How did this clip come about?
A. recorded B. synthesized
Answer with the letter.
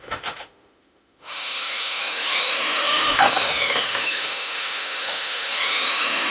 B